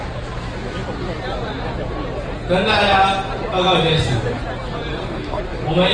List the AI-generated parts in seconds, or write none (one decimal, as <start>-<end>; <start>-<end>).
4.9-5.4